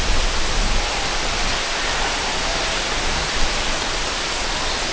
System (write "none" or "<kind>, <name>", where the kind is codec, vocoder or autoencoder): none